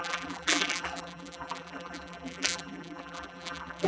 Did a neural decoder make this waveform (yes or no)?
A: yes